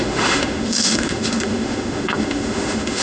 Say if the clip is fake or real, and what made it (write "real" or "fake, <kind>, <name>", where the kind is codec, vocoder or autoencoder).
fake, autoencoder, DAC-VAE